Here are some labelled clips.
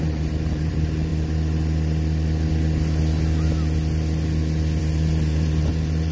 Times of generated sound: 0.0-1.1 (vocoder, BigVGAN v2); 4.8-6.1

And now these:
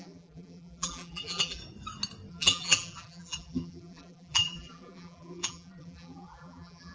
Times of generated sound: 0.0-1.6 (vocoder, BigVGAN v2); 2.3-6.9

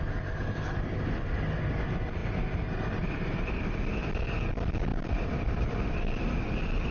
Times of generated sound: 2.2-3.7 (vocoder, BigVGAN v2); 4.9-5.7

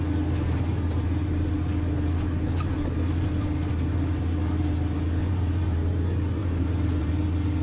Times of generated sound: 5.2-6.0 (vocoder, BigVGAN v2); 6.4-7.1

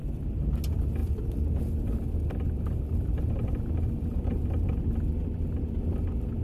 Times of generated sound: 0.0-0.5 (vocoder, BigVGAN v2); 1.0-4.8

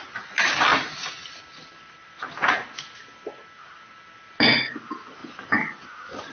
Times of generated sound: 0.7-1.3 (vocoder, BigVGAN v2); 2.0-2.5

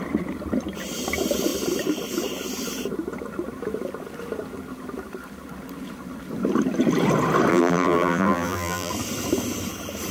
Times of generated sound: 7.5-8.9 (vocoder, BigVGAN v2)

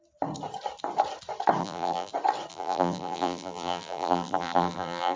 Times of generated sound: 1.6-2.1 (vocoder, BigVGAN v2); 2.5-5.2